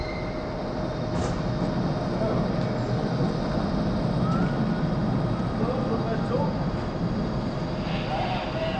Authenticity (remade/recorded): recorded